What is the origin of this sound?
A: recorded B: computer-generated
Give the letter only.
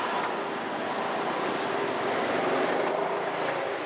A